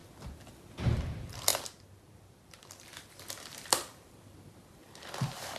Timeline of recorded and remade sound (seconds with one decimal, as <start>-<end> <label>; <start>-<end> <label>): 0.0-0.8 recorded; 0.8-4.8 remade; 4.8-5.6 recorded